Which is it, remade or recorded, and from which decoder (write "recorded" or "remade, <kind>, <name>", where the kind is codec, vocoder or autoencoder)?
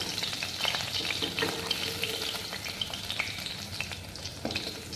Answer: recorded